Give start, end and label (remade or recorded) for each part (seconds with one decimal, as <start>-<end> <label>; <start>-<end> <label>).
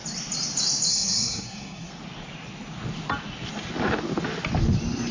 0.0-0.9 recorded; 0.9-1.9 remade; 1.9-5.1 recorded